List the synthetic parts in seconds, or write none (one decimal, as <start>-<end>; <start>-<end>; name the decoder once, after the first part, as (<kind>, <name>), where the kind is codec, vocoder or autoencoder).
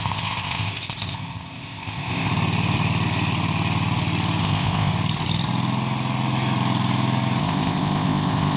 0.0-2.3 (codec, ZipCodec); 4.4-4.9; 7.4-8.6